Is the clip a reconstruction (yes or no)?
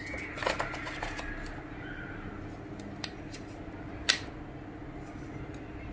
no